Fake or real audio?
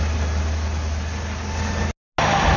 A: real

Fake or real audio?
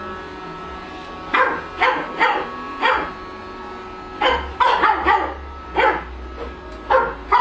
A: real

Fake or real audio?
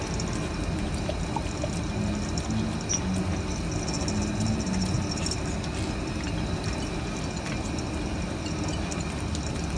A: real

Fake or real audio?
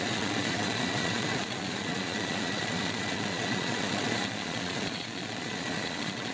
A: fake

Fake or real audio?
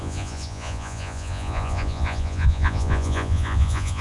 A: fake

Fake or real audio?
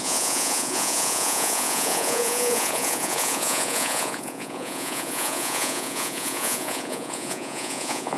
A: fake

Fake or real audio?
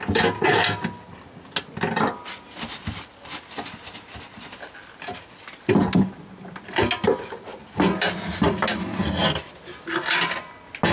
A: real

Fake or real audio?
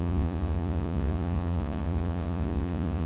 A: fake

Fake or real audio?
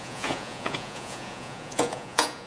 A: fake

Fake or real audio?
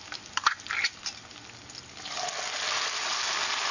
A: real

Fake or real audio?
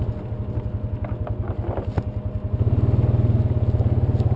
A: real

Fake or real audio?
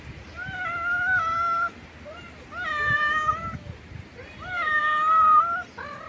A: real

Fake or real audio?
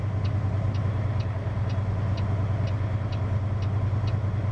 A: real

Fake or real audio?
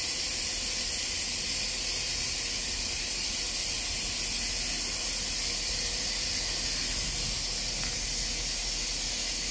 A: real